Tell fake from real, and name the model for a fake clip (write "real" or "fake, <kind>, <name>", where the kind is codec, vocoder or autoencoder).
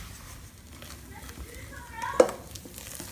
real